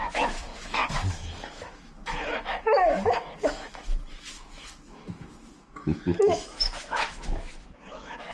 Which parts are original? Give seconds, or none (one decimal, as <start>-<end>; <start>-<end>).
none